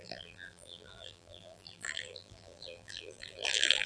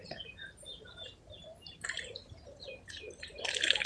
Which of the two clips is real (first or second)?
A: second